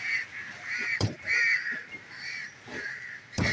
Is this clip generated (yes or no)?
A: yes